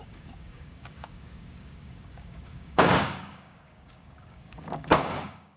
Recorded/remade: remade